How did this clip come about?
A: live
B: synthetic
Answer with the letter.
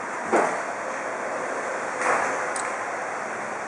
A